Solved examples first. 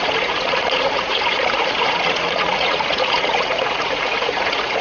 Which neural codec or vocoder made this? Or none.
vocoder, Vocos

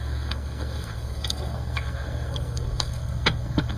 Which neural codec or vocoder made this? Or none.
codec, SNAC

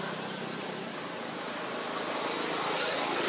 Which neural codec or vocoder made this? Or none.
none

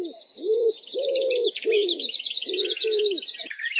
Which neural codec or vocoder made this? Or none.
vocoder, BigVGAN v2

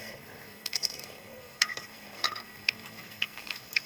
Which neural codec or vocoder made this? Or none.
codec, SNAC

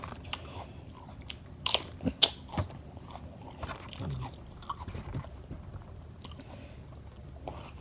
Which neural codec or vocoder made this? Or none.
none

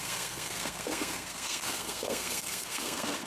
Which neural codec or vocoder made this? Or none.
codec, SNAC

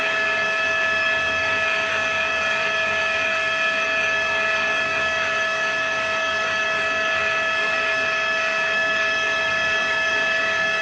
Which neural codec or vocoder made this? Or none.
codec, DAC